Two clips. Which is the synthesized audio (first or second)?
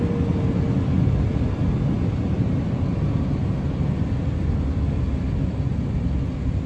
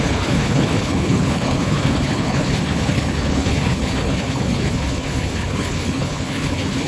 second